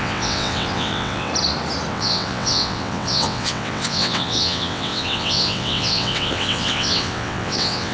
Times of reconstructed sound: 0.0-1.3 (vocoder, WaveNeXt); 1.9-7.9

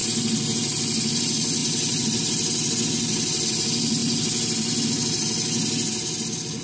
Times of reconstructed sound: none